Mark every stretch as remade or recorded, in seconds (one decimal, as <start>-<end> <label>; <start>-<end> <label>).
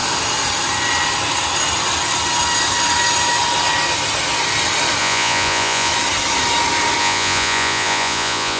0.0-5.0 recorded; 5.0-5.9 remade; 5.9-7.0 recorded; 7.0-8.6 remade